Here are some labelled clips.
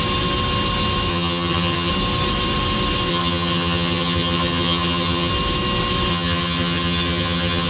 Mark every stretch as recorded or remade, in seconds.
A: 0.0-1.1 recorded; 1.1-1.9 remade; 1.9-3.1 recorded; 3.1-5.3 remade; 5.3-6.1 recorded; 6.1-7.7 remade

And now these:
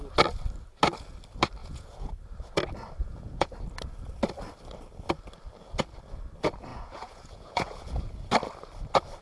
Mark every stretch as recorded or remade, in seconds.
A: 0.0-1.6 recorded; 1.6-2.1 remade; 2.1-3.0 recorded; 3.0-3.5 remade; 3.5-6.7 recorded; 6.7-8.1 remade; 8.1-9.2 recorded

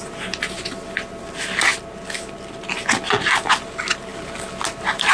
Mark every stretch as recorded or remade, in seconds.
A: 0.0-5.1 recorded